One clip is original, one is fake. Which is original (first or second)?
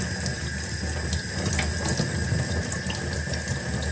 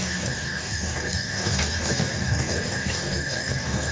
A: first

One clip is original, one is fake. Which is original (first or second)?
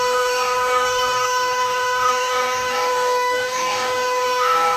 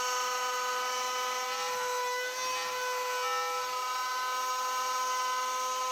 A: second